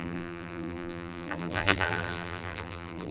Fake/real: fake